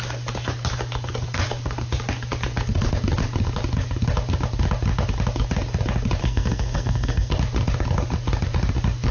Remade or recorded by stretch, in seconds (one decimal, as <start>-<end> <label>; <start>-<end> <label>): 0.0-6.2 recorded; 6.2-7.3 remade; 7.3-9.1 recorded